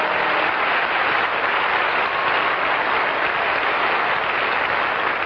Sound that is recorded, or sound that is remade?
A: recorded